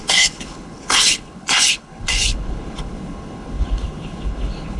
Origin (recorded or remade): remade